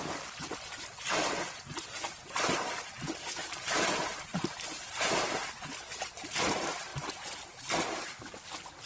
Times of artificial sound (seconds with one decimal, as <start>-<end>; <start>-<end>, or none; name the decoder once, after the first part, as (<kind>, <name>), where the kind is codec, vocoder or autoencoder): 3.4-5.5 (vocoder, BigVGAN v2)